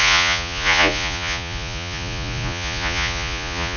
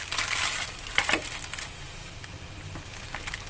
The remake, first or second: first